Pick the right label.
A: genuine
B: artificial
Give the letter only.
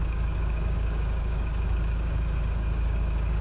B